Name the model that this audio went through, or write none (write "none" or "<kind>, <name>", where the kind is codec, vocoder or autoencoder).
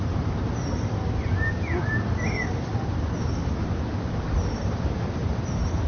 none